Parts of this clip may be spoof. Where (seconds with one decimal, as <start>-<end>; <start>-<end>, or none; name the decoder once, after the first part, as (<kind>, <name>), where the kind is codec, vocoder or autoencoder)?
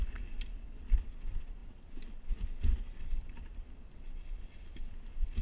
none